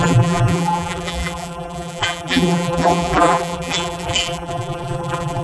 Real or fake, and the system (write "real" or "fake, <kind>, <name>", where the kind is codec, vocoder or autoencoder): fake, vocoder, BigVGAN v2